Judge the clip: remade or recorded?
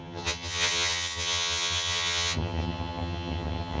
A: remade